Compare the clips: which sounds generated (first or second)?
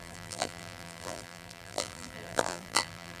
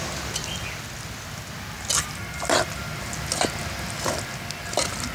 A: first